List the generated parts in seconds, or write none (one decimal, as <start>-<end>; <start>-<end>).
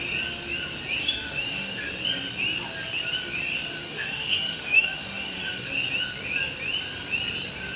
1.0-1.8; 3.8-5.7